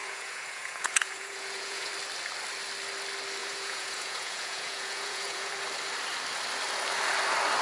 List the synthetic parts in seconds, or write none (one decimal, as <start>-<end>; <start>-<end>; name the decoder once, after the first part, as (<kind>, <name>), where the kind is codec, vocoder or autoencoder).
0.0-1.9 (vocoder, Vocos); 3.4-5.5